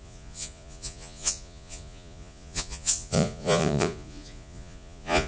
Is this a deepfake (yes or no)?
yes